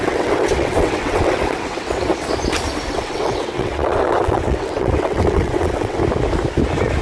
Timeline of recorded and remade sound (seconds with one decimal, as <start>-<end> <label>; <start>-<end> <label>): 0.0-2.1 remade; 2.1-2.9 recorded; 2.9-6.0 remade; 6.0-7.0 recorded